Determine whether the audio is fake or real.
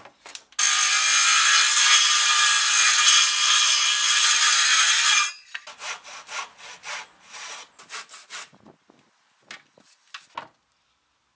real